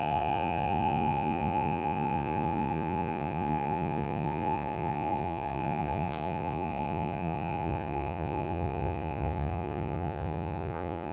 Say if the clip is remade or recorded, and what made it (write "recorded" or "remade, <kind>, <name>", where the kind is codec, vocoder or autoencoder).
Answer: remade, vocoder, Vocos